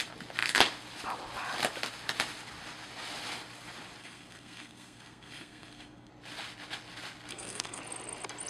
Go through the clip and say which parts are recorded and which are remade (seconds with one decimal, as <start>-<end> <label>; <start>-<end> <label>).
0.0-4.0 recorded; 4.0-6.1 remade; 6.1-7.3 recorded; 7.3-7.8 remade; 7.8-8.5 recorded